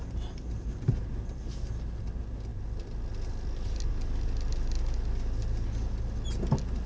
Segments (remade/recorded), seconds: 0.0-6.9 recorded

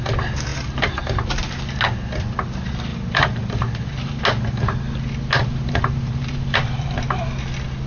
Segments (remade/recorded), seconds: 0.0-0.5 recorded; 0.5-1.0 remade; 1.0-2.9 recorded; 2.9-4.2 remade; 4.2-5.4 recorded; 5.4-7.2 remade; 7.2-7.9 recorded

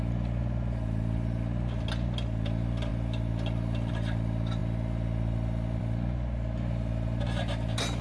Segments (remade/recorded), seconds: 0.0-8.0 recorded

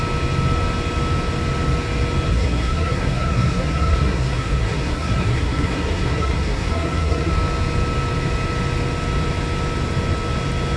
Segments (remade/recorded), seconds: 0.0-2.3 recorded; 2.3-7.3 remade; 7.3-10.8 recorded